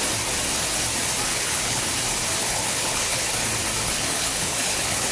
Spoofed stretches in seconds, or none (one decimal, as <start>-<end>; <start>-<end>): 1.3-1.8; 2.4-3.3; 3.8-5.1